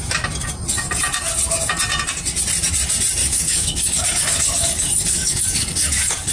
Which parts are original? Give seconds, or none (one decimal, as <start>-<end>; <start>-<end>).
0.0-3.2